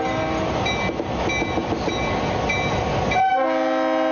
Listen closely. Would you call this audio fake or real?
real